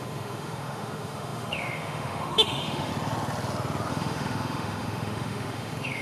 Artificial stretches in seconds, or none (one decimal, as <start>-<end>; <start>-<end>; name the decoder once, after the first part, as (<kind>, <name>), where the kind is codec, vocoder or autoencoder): 0.0-2.9 (autoencoder, DAC-VAE); 3.9-6.0